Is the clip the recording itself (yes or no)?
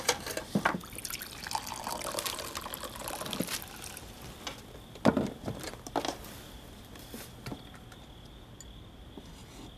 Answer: yes